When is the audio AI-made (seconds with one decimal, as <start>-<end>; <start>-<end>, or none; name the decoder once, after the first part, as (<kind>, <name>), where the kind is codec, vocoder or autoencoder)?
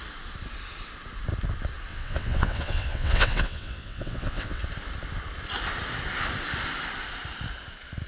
1.9-4.6 (vocoder, WaveNeXt)